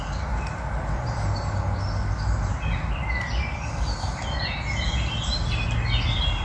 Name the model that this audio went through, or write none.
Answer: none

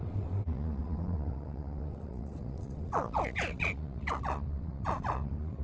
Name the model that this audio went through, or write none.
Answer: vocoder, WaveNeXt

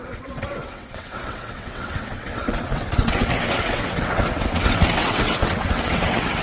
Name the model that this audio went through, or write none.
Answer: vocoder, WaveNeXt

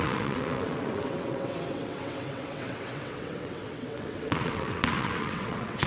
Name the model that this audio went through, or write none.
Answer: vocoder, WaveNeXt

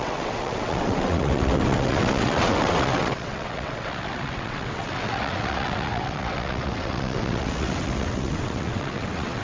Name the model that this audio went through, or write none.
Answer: vocoder, WaveNeXt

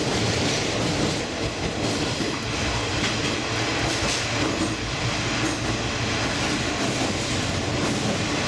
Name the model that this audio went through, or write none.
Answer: none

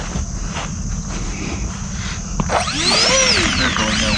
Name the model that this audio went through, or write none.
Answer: none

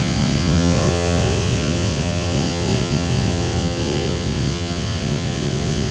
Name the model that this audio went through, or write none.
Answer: vocoder, WaveNeXt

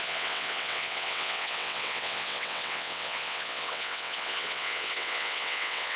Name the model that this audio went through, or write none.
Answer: vocoder, WaveNeXt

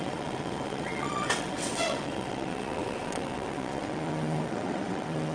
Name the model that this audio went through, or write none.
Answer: vocoder, WaveNeXt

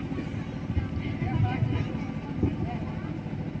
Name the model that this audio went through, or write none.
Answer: none